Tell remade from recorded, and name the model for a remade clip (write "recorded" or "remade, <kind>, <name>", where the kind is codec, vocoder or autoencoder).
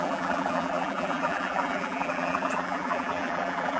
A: remade, vocoder, BigVGAN v2